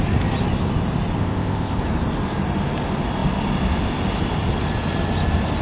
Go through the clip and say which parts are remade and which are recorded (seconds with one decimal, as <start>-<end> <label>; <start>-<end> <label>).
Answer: 0.0-1.2 recorded; 1.2-1.8 remade; 1.8-5.6 recorded